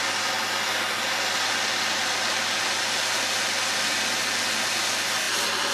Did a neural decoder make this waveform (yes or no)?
no